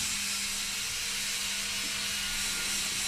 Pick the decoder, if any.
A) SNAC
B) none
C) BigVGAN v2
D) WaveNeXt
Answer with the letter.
B